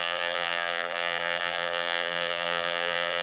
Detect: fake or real fake